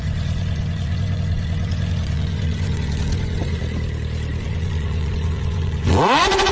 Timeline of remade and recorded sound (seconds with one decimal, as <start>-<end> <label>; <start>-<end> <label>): 0.0-3.6 remade; 3.6-4.4 recorded; 4.4-6.5 remade